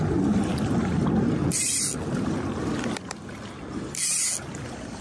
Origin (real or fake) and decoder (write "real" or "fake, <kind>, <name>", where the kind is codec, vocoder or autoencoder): real